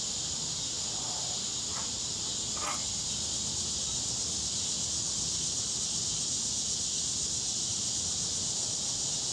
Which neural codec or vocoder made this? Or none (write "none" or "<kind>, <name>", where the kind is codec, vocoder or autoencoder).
none